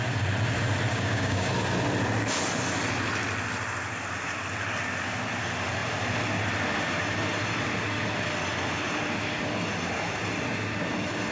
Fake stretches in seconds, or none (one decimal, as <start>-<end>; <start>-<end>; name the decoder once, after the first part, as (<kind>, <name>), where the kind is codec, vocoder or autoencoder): 0.9-1.5 (codec, DAC)